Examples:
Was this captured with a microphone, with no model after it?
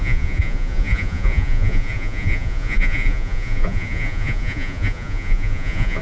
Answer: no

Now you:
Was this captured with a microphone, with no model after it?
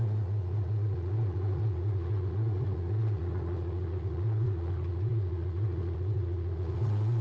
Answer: no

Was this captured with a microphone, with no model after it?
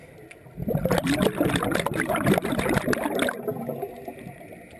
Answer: yes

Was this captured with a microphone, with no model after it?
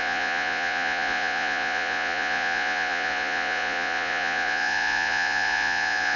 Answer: no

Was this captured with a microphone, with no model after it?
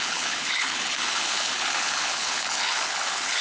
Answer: no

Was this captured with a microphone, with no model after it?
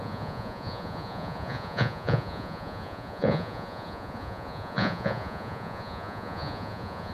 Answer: no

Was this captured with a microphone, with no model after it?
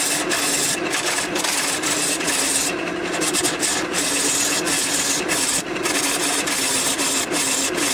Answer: yes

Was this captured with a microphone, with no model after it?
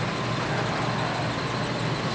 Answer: yes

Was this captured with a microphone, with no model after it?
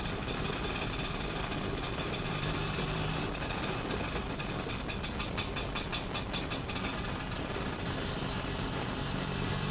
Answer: yes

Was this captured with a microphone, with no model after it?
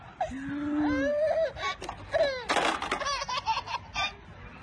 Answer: yes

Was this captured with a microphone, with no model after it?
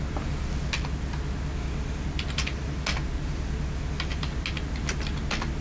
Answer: yes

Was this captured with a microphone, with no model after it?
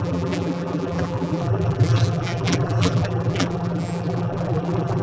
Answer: no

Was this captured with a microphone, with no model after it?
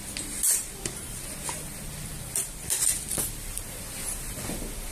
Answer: no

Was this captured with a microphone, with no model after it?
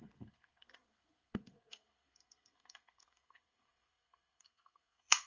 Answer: no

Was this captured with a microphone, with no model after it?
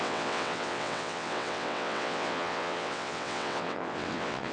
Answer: no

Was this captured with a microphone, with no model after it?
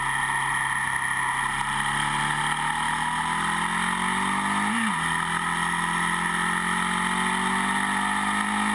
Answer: yes